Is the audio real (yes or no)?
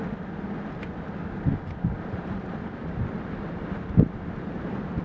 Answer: yes